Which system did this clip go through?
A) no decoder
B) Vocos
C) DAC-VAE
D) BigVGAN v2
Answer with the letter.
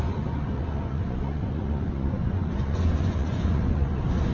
B